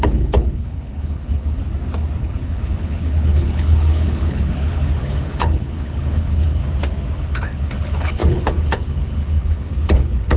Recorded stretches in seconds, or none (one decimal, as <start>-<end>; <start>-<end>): 1.6-2.2; 6.6-7.2